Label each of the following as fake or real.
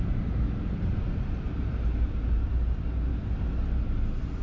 real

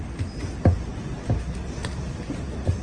real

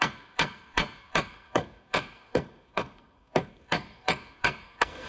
fake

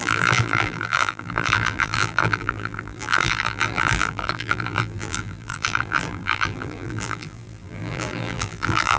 fake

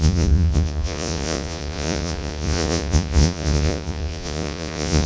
fake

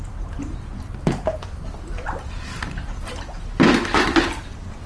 real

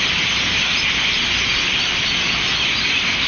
real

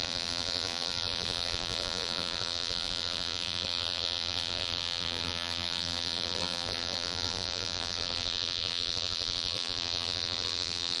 fake